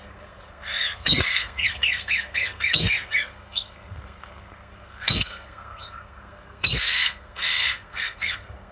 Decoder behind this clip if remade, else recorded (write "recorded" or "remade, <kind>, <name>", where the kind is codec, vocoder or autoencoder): remade, codec, SNAC